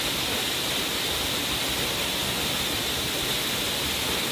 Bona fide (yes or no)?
yes